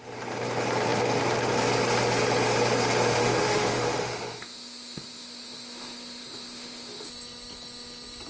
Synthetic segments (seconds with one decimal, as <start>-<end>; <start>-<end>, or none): 3.1-7.1